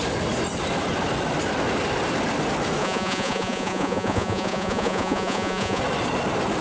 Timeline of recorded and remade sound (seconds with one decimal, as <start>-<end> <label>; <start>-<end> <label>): 0.0-2.8 recorded; 2.8-5.8 remade; 5.8-6.6 recorded